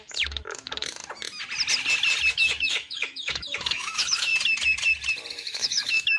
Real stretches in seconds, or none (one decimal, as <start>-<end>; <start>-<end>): 1.0-2.3; 4.3-5.3